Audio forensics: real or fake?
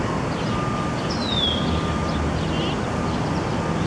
real